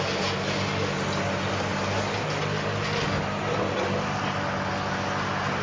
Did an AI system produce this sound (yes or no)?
no